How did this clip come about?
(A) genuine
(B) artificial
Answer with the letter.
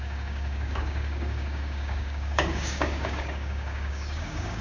B